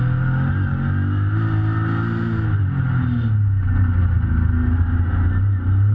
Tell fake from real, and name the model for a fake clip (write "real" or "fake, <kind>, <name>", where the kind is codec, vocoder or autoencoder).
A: real